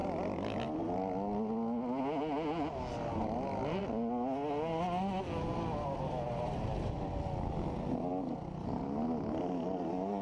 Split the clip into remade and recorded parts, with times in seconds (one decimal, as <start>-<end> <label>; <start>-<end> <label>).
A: 0.0-10.2 recorded